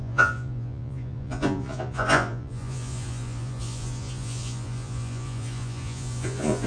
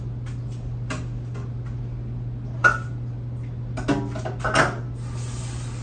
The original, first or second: second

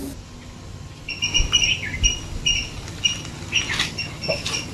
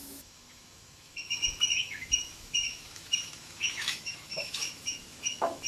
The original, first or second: first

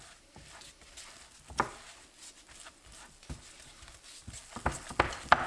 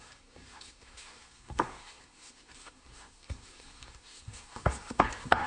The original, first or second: first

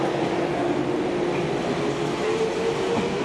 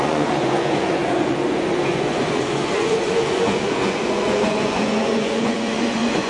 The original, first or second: first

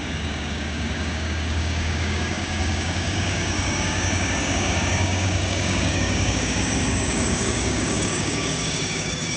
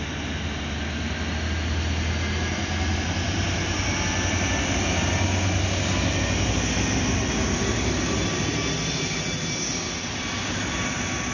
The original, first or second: second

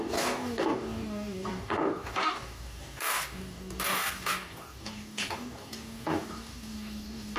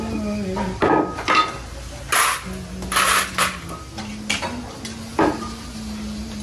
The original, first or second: second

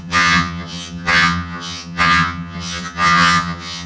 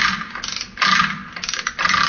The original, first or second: second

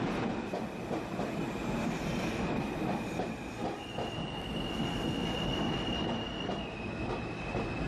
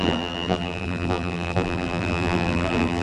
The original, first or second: first